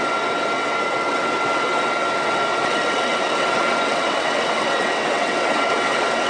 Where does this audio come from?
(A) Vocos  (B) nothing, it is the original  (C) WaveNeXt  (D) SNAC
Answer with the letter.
C